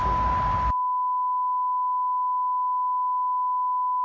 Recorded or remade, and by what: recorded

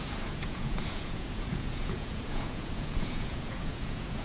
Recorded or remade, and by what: remade, vocoder, Vocos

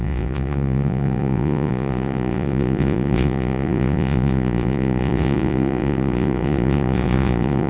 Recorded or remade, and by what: remade, vocoder, Vocos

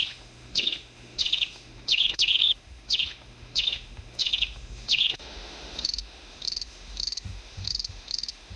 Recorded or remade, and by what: remade, autoencoder, DAC-VAE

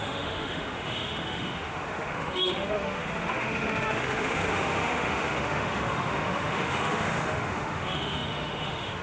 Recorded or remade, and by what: remade, autoencoder, DAC-VAE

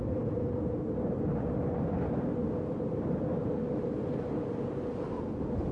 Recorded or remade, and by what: recorded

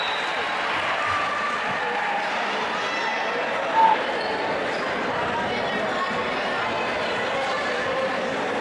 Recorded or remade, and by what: remade, vocoder, BigVGAN v2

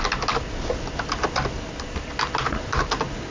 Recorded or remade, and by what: recorded